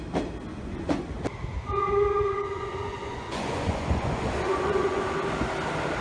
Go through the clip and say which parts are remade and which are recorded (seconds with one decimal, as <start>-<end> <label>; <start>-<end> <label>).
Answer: 0.0-0.5 recorded; 0.5-1.1 remade; 1.1-1.5 recorded; 1.5-5.1 remade; 5.1-6.0 recorded